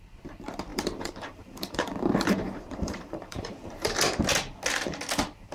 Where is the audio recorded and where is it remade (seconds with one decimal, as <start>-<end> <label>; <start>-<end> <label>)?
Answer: 0.0-0.7 recorded; 0.7-4.0 remade; 4.0-5.5 recorded